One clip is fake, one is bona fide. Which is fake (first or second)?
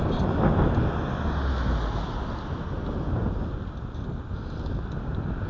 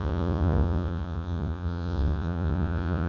second